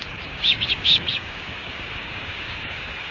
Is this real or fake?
fake